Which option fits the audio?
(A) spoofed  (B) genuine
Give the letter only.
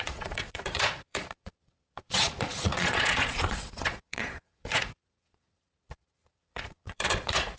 A